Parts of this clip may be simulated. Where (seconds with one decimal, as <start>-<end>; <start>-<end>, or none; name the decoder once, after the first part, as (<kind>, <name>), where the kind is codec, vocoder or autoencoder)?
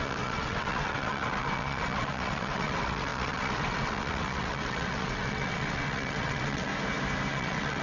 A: 0.0-6.7 (vocoder, WaveNeXt); 7.3-7.8